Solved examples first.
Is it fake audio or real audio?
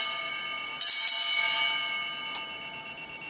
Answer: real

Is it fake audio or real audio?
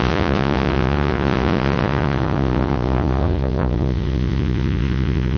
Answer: fake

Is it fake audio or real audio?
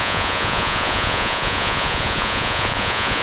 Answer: fake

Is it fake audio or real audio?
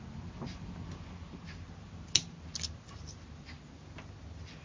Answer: real